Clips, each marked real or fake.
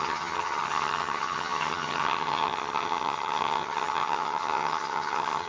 fake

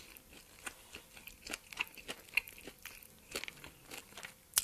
real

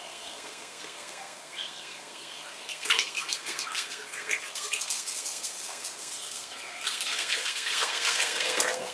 fake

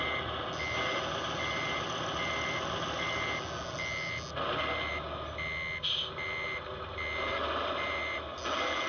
real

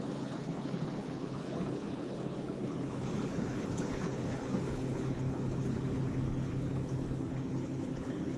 fake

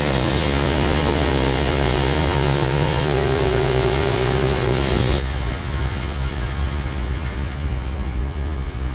fake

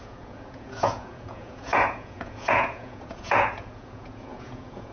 fake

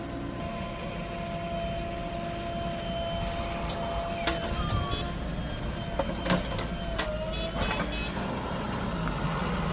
real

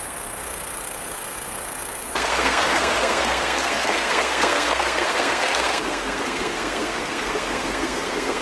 fake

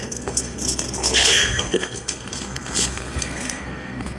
fake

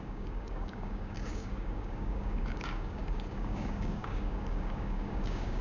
fake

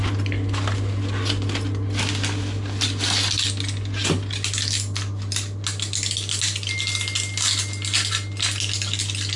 real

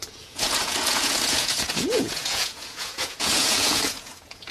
fake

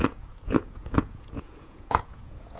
fake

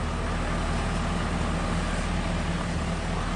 real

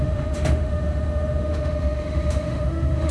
fake